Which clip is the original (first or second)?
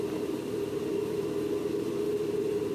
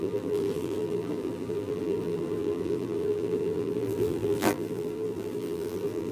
first